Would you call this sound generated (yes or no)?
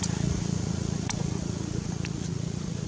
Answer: yes